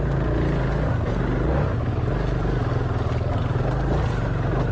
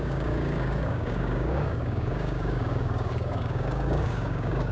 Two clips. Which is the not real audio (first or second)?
second